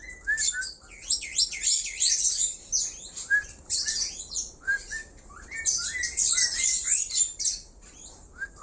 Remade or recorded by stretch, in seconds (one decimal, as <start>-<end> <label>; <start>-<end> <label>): 0.0-3.4 recorded; 3.4-7.4 remade; 7.4-8.6 recorded

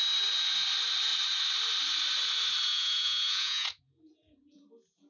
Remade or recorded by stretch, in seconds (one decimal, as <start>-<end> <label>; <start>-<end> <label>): 0.0-2.7 recorded; 2.7-5.1 remade

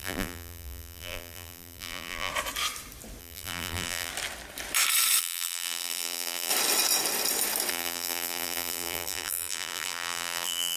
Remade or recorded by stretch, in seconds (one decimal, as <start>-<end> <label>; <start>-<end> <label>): 0.0-2.3 remade; 2.3-3.2 recorded; 3.2-4.1 remade; 4.1-5.2 recorded; 5.2-6.5 remade; 6.5-7.7 recorded; 7.7-10.8 remade